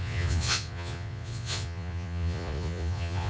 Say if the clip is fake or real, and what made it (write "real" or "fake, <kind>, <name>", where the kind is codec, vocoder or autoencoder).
fake, vocoder, Vocos